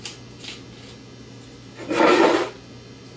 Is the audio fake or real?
real